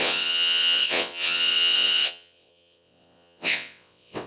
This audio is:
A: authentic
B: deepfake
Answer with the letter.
B